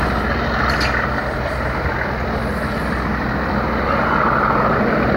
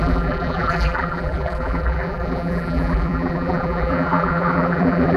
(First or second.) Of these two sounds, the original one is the first